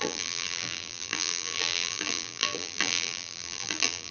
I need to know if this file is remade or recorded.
remade